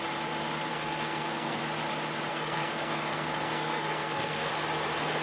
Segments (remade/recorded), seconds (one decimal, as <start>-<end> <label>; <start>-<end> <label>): 0.0-0.7 recorded; 0.7-1.6 remade; 1.6-2.3 recorded; 2.3-4.5 remade; 4.5-5.2 recorded